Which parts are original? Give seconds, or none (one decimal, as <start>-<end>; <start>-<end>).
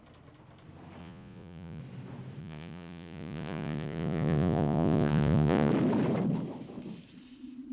0.0-1.0; 1.8-2.4; 5.7-7.7